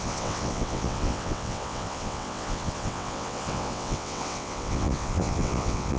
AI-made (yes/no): yes